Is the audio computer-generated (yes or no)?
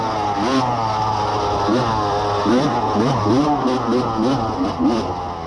no